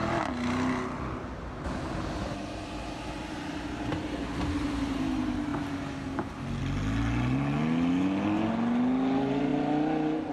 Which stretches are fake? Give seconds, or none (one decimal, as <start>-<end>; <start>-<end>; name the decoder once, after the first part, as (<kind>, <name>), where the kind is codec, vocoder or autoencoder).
none